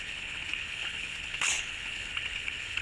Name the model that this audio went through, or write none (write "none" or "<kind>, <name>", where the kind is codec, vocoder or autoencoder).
codec, HILCodec